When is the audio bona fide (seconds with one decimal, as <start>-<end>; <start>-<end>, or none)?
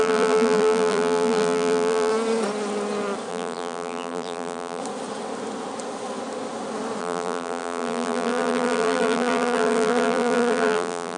2.1-3.3; 4.8-7.0